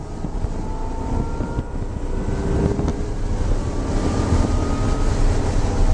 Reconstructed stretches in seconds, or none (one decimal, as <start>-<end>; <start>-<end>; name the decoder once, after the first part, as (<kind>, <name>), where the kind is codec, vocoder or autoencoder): 2.9-4.7 (vocoder, BigVGAN v2)